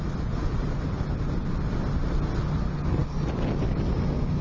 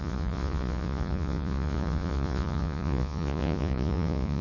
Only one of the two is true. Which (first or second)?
first